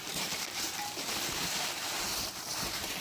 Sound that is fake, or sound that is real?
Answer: fake